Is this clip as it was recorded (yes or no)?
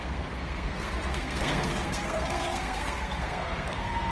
no